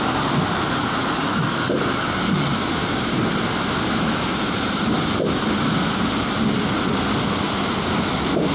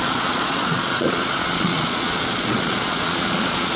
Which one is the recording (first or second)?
first